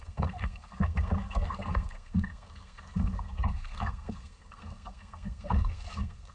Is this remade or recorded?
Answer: remade